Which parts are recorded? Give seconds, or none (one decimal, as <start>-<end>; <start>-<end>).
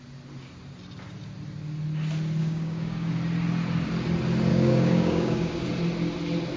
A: 0.0-2.4; 3.1-4.5; 5.7-6.6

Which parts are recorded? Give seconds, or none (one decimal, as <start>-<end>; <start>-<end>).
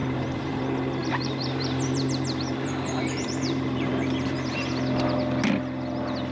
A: 0.6-1.0; 4.7-6.3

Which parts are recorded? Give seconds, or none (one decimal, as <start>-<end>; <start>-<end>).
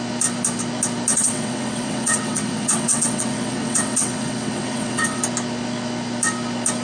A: 0.0-1.1; 5.2-6.8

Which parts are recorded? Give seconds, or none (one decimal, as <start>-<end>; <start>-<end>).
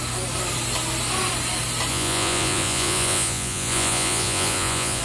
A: 0.0-1.9